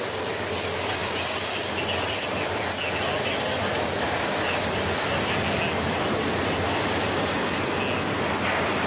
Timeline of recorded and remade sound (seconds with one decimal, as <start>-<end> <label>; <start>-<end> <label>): 0.0-8.9 recorded